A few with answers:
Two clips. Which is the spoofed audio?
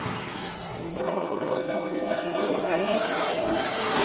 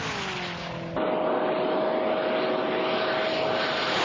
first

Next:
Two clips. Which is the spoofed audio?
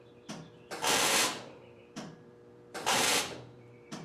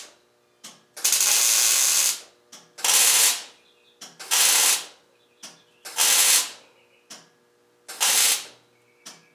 first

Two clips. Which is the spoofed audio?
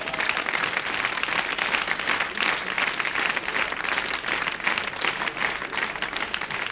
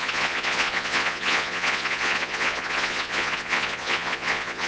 second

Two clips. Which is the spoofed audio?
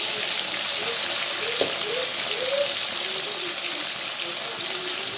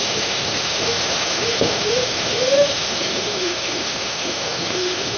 second